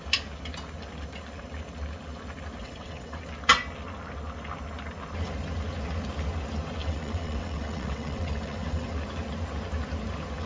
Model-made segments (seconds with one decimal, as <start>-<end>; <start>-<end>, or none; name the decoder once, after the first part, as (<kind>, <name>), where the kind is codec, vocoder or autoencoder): 2.6-3.2 (vocoder, WaveNeXt); 6.8-8.9